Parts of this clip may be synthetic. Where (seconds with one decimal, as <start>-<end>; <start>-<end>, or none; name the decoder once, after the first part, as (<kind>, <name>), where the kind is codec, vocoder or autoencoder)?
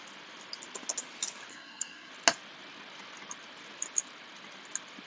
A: 1.5-2.1 (codec, SNAC)